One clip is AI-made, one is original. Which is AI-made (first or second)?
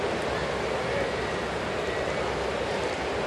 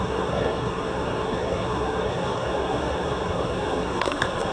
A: second